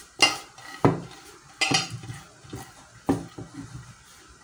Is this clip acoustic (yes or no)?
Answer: yes